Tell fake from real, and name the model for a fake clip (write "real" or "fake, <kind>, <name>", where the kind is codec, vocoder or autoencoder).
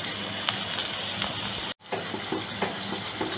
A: real